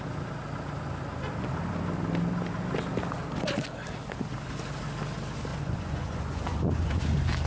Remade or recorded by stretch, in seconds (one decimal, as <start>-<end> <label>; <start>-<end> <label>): 0.0-5.5 recorded; 5.5-7.0 remade; 7.0-7.5 recorded